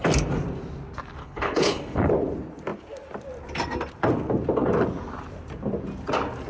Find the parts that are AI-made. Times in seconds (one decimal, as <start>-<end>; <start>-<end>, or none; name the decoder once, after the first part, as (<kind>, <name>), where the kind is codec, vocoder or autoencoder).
1.2-2.1 (codec, HILCodec)